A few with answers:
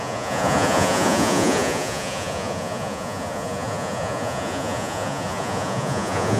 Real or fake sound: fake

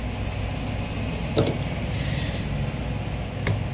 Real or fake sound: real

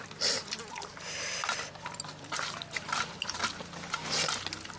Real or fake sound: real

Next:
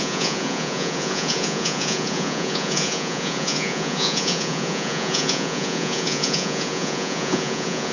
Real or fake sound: fake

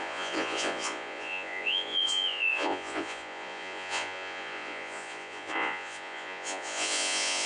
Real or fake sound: fake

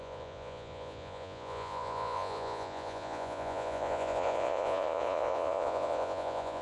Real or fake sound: fake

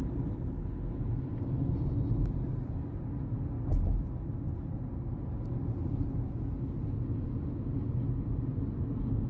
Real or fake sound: real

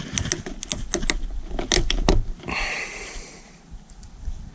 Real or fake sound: real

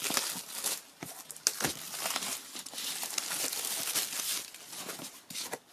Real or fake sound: real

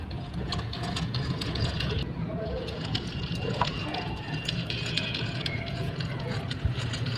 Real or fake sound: fake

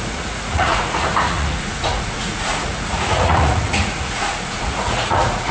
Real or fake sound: fake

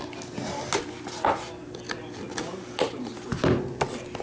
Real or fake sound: real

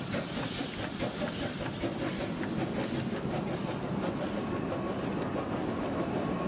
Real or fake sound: real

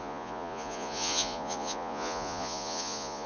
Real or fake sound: fake